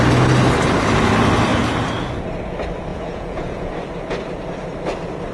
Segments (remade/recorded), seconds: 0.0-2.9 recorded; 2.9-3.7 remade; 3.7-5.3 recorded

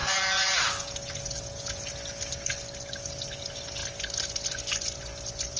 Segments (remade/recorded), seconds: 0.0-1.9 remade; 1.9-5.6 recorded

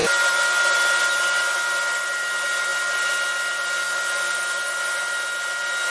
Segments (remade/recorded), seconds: 0.0-5.9 recorded

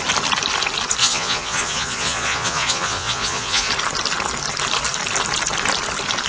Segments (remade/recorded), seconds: 0.0-1.0 recorded; 1.0-3.7 remade; 3.7-6.3 recorded

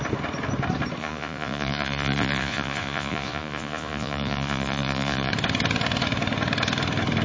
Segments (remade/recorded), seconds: 0.0-1.0 recorded; 1.0-5.3 remade; 5.3-7.2 recorded